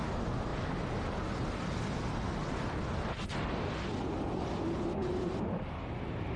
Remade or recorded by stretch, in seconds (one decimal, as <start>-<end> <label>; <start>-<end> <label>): 0.0-6.4 recorded